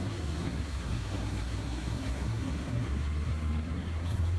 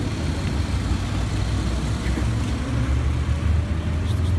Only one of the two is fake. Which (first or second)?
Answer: first